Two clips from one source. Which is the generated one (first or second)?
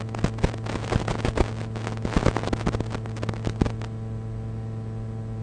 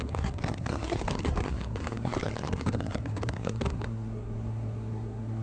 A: second